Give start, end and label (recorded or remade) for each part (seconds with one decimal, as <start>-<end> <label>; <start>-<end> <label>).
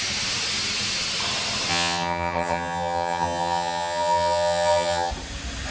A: 0.0-1.7 recorded; 1.7-5.1 remade; 5.1-5.7 recorded